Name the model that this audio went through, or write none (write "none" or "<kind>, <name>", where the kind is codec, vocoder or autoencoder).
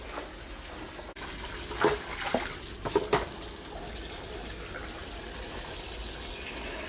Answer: none